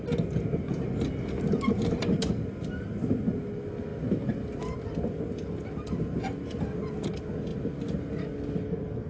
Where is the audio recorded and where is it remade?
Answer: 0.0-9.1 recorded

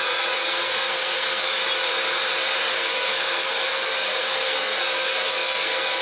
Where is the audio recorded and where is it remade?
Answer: 0.0-1.6 remade; 1.6-2.7 recorded; 2.7-6.0 remade

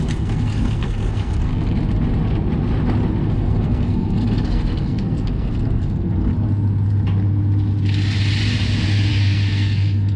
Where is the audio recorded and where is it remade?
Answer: 0.0-1.5 remade; 1.5-3.3 recorded; 3.3-6.3 remade; 6.3-9.1 recorded; 9.1-10.2 remade